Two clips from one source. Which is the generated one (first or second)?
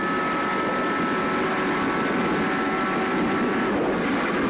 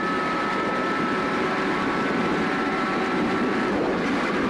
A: second